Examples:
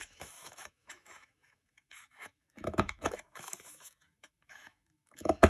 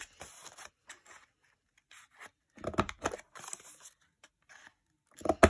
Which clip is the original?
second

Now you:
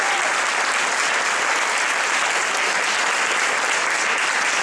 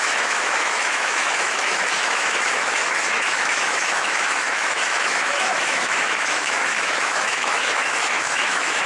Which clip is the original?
first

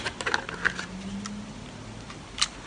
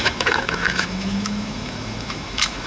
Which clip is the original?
first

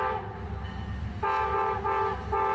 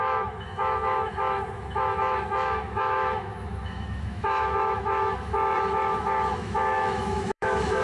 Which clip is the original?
first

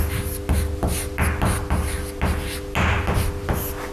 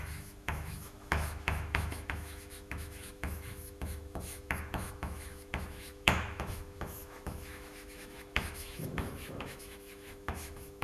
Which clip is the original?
first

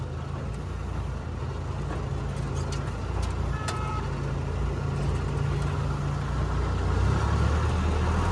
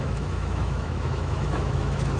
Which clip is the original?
first